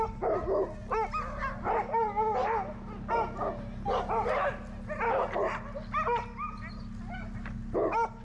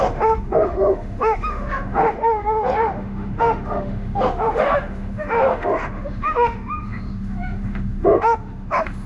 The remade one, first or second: second